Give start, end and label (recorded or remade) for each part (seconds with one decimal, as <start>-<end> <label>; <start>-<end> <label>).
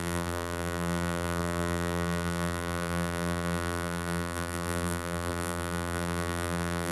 0.0-6.9 remade